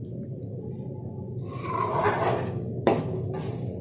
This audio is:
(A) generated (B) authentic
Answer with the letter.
A